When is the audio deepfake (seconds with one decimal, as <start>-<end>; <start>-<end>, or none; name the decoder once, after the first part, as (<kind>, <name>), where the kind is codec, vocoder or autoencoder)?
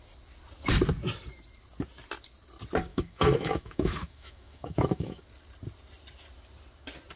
2.9-5.2 (autoencoder, DAC-VAE)